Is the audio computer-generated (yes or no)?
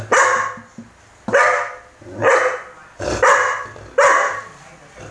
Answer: no